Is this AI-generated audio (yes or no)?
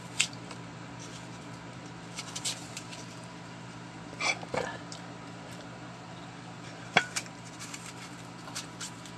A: yes